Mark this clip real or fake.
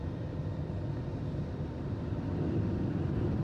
fake